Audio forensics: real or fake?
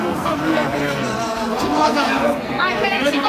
fake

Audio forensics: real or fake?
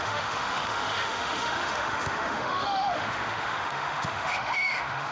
fake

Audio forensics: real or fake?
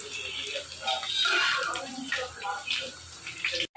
real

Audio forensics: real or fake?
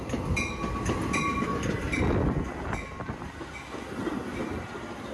real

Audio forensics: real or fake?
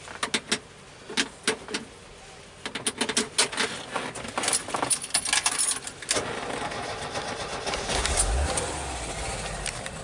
real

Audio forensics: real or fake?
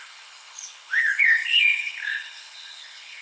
fake